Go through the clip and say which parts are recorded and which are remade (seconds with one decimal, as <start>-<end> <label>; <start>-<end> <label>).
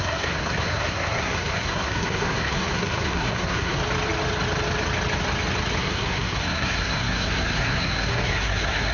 0.0-3.8 remade; 3.8-5.8 recorded; 5.8-8.9 remade